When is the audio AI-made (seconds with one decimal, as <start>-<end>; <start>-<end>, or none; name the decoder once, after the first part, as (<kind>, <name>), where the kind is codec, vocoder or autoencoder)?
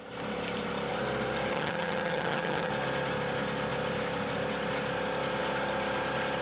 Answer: 1.5-2.7 (vocoder, HiFi-GAN)